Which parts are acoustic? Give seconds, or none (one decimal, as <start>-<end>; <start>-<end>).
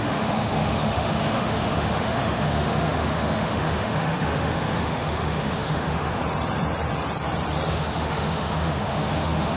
6.2-7.7